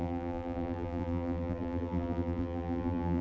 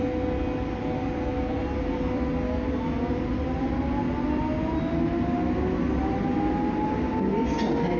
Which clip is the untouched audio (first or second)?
second